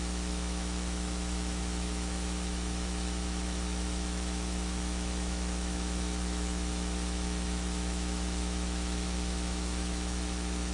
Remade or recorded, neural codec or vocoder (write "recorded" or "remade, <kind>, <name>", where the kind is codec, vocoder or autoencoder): remade, autoencoder, DAC-VAE